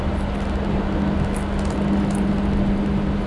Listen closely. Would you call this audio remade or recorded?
recorded